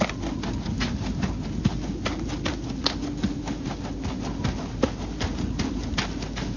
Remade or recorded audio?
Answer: recorded